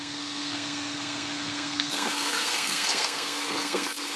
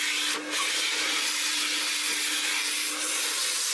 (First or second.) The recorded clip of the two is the second